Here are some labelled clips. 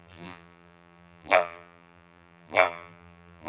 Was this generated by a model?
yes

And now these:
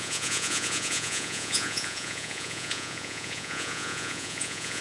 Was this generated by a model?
yes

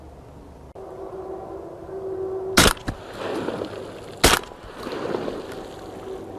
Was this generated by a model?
no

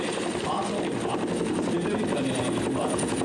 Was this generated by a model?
no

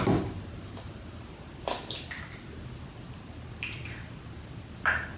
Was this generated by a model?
no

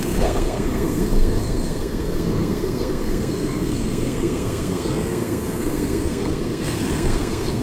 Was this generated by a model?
yes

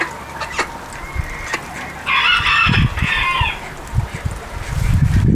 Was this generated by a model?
no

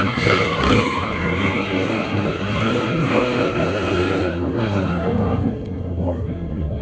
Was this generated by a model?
yes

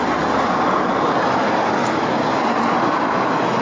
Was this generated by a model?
no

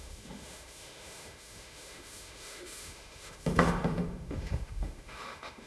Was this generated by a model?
yes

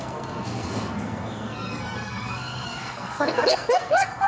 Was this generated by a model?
yes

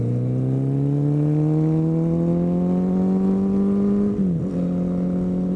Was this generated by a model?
no